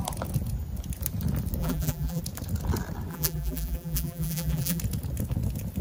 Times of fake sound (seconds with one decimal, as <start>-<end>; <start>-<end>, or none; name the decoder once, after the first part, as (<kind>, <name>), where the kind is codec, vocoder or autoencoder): 1.6-2.2 (vocoder, BigVGAN v2); 3.1-4.8